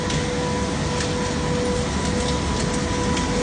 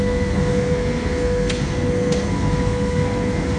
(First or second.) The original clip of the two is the first